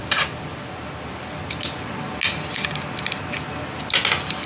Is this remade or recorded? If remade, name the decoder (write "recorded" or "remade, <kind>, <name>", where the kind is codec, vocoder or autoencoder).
recorded